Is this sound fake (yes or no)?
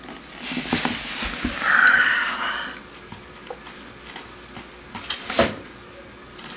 no